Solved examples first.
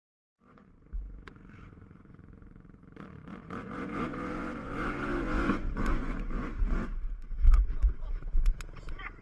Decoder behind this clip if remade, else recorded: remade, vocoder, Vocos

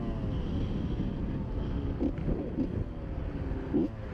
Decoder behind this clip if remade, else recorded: recorded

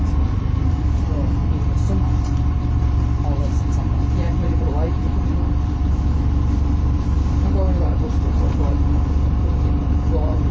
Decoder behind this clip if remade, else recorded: remade, vocoder, BigVGAN v2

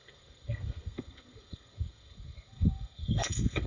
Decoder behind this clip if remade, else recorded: remade, codec, SNAC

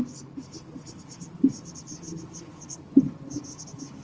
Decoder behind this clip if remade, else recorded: recorded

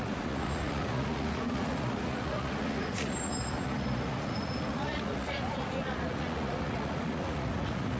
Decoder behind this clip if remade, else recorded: remade, vocoder, Vocos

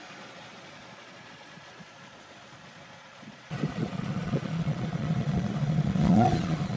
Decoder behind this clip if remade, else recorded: remade, vocoder, Vocos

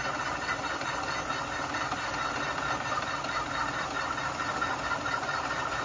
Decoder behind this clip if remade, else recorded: recorded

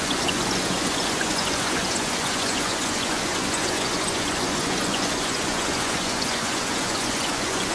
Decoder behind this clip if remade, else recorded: remade, vocoder, Vocos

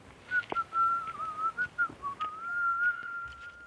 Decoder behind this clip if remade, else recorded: recorded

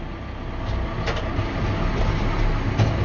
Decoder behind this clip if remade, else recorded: recorded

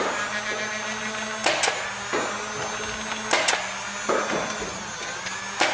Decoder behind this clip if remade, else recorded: recorded